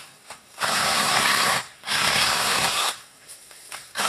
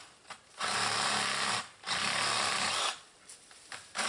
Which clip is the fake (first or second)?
first